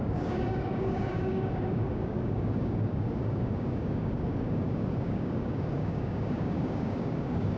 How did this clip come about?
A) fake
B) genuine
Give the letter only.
A